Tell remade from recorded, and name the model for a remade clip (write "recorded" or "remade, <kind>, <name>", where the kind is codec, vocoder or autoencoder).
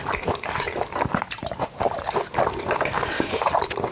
recorded